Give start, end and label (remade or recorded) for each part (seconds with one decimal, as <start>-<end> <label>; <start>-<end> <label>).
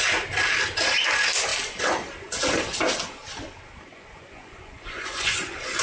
0.0-3.9 recorded; 3.9-5.8 remade